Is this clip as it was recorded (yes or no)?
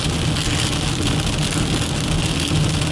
yes